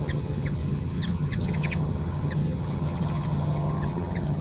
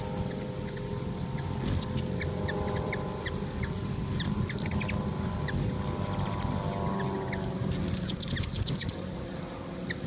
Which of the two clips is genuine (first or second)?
second